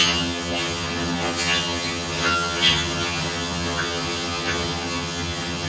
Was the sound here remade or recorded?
remade